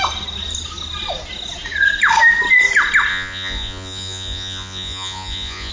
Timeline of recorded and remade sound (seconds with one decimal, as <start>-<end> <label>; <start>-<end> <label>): 0.0-3.1 recorded; 3.1-5.7 remade